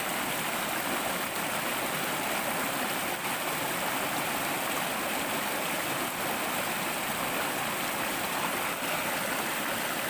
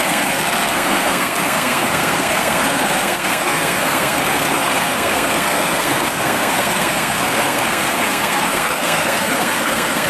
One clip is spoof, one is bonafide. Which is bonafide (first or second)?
first